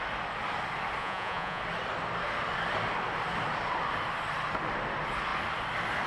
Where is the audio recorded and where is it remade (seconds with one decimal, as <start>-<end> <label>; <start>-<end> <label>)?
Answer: 0.0-1.0 recorded; 1.0-1.6 remade; 1.6-6.1 recorded

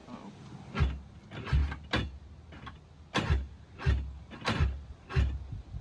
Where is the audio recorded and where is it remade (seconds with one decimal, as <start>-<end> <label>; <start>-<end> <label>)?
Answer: 0.0-5.8 recorded

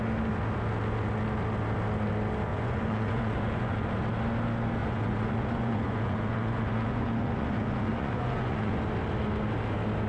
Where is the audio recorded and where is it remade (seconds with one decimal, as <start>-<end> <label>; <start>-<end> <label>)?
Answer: 0.0-2.5 recorded; 2.5-3.9 remade; 3.9-4.8 recorded; 4.8-8.8 remade; 8.8-10.1 recorded

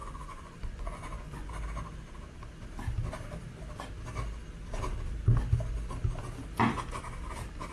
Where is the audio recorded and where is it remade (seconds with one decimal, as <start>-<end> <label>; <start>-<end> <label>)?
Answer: 0.0-1.5 remade; 1.5-7.7 recorded

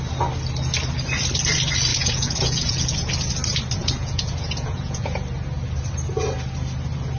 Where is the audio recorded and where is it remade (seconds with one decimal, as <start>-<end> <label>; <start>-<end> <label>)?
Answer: 0.0-1.9 recorded; 1.9-3.1 remade; 3.1-3.8 recorded; 3.8-5.1 remade; 5.1-7.2 recorded

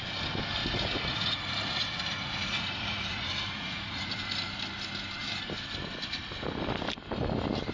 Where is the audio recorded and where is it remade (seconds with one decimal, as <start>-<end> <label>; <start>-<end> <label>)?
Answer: 0.0-0.6 recorded; 0.6-4.2 remade; 4.2-7.7 recorded

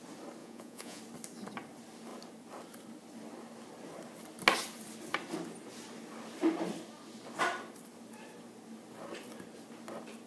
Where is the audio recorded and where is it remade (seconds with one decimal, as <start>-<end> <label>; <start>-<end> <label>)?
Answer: 0.0-0.4 recorded; 0.4-1.0 remade; 1.0-10.3 recorded

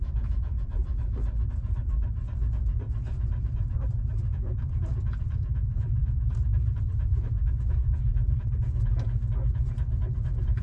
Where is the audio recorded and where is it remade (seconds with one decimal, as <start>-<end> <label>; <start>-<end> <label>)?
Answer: 0.0-0.7 remade; 0.7-4.3 recorded; 4.3-9.3 remade; 9.3-10.6 recorded